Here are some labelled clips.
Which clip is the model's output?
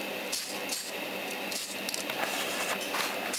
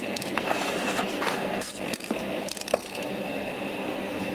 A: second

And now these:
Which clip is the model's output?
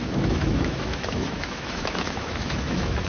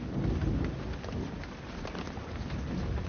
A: first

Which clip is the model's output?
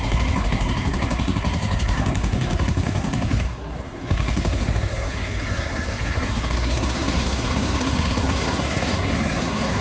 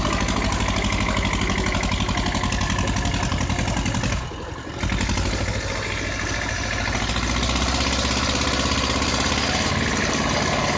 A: first